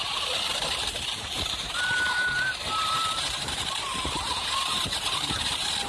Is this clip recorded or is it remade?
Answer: remade